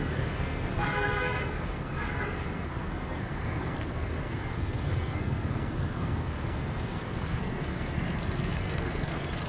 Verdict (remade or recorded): remade